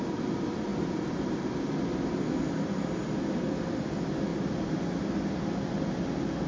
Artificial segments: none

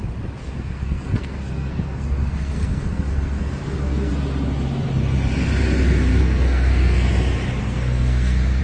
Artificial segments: 0.4-4.1 (codec, SNAC); 6.1-7.1; 7.6-8.6

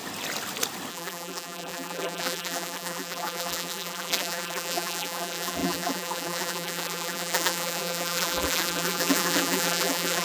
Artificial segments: 0.9-10.2 (vocoder, BigVGAN v2)

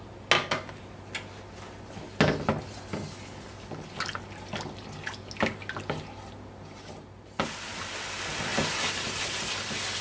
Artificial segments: none

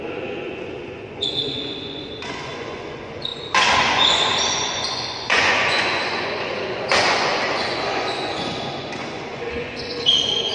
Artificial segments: 0.0-10.5 (vocoder, Vocos)

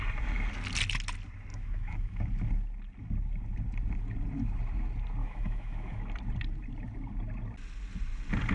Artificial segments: 1.5-2.2 (autoencoder, DAC-VAE); 5.2-6.0

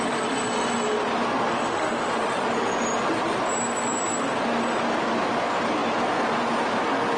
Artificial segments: 1.5-2.1 (autoencoder, DAC-VAE)